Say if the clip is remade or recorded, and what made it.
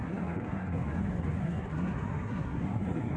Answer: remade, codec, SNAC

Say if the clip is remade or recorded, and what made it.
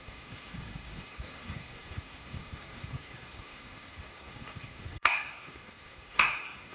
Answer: remade, codec, SNAC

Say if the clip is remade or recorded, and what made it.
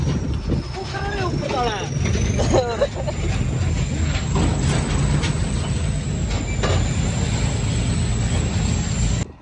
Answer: recorded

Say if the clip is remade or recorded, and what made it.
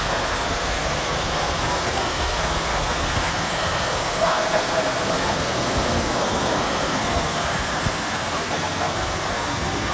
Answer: remade, codec, SNAC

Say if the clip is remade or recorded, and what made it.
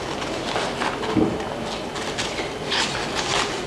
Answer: recorded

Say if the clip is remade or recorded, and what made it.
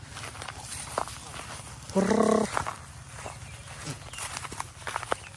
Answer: recorded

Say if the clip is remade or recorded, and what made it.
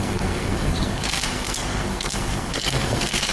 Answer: remade, codec, SNAC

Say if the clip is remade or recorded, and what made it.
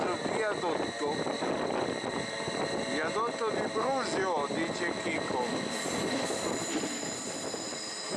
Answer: recorded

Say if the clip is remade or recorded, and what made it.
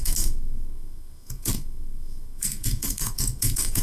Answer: remade, codec, SNAC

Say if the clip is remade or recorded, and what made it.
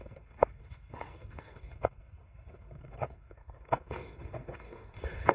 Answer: remade, codec, SNAC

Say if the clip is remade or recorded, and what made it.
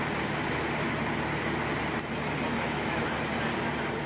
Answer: recorded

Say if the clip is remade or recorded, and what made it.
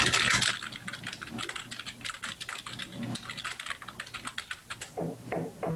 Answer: recorded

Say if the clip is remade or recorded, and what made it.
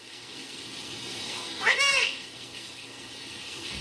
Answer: remade, codec, SNAC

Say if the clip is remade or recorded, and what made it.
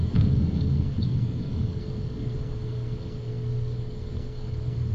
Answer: remade, codec, SNAC